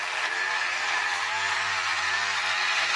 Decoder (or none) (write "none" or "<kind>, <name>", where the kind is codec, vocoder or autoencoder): none